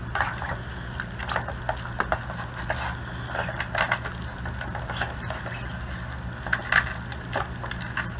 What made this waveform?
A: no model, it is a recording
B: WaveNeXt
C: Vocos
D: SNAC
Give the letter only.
A